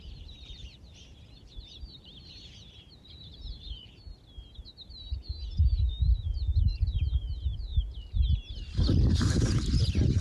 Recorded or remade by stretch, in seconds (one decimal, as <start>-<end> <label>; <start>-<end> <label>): 0.0-4.0 remade; 4.0-5.9 recorded; 5.9-7.7 remade; 7.7-8.9 recorded; 8.9-10.2 remade